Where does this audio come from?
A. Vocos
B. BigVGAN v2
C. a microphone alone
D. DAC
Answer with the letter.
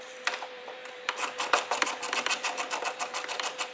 B